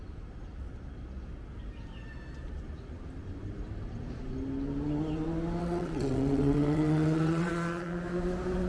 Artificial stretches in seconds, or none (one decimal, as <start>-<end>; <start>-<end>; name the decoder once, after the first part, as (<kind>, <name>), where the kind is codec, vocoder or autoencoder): 5.6-7.5 (vocoder, WaveNeXt)